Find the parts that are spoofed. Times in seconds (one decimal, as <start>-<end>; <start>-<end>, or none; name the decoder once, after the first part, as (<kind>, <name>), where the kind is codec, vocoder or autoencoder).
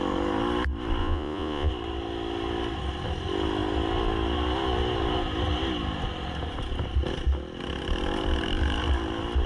1.0-1.7 (vocoder, Vocos)